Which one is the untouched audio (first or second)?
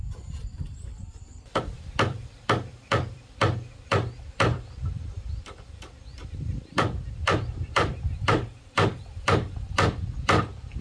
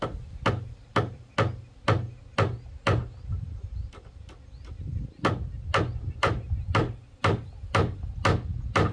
second